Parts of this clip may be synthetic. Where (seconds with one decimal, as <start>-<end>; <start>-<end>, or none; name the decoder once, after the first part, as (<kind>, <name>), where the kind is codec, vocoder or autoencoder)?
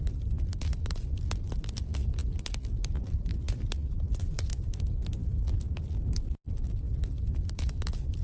none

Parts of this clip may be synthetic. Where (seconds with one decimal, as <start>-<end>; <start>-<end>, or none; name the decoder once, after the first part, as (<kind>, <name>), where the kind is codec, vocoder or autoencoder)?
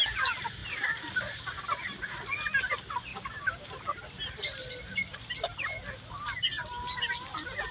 3.1-3.7 (codec, DAC)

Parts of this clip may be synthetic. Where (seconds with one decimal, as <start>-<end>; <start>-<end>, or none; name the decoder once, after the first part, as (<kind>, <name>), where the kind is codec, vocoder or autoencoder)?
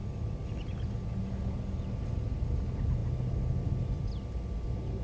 none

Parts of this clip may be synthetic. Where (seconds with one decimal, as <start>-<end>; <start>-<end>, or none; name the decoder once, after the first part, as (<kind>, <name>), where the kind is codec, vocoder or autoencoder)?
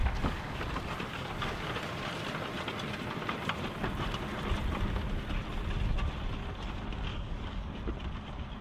0.0-0.6 (codec, DAC); 1.1-1.7; 7.1-7.7